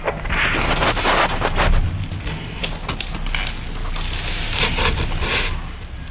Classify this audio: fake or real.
real